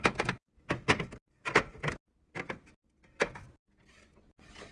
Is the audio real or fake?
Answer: real